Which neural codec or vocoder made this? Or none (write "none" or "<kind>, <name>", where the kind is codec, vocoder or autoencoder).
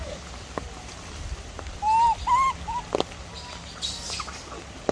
none